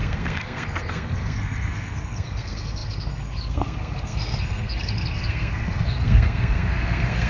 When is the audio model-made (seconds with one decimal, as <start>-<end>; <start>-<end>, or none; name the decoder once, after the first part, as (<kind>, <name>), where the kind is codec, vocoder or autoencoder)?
0.0-7.3 (codec, SNAC)